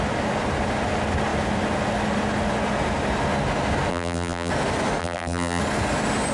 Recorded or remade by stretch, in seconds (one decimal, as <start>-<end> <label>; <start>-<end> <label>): 0.0-3.9 recorded; 3.9-4.5 remade; 4.5-5.0 recorded; 5.0-5.6 remade; 5.6-6.3 recorded